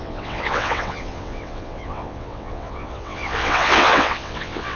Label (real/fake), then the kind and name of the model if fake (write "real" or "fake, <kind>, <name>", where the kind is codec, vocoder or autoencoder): fake, vocoder, WaveNeXt